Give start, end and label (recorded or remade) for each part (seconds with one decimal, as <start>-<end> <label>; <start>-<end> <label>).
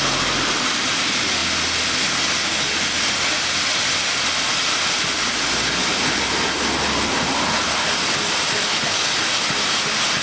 0.0-10.2 recorded